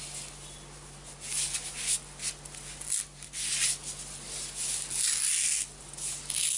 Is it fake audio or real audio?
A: real